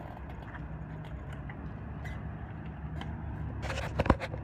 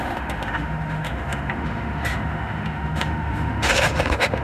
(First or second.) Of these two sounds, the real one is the first